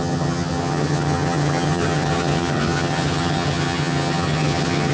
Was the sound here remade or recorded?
remade